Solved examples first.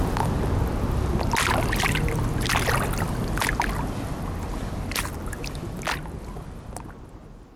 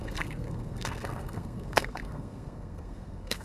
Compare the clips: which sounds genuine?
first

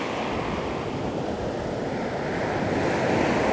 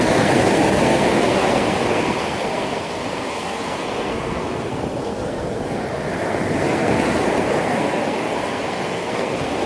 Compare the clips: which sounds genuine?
first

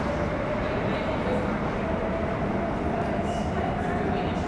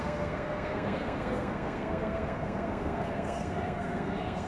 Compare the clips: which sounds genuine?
first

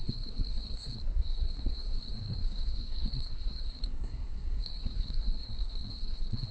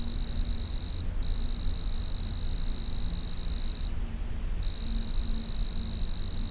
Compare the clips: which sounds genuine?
second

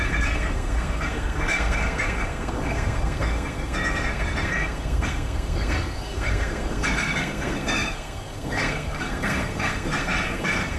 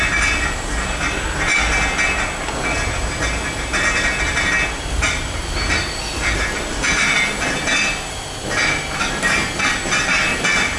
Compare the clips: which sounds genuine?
second